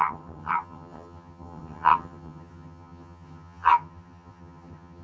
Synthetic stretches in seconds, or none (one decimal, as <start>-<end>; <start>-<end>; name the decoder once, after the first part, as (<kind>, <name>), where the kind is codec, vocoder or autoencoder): 0.0-5.0 (vocoder, HiFi-GAN)